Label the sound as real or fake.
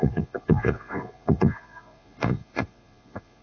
fake